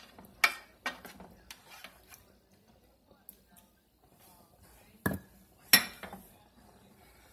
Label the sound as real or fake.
real